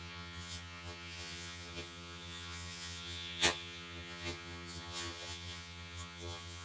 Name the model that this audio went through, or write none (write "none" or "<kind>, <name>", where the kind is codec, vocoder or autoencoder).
vocoder, HiFi-GAN